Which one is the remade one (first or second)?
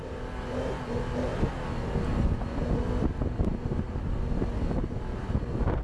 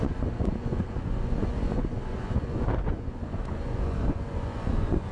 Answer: second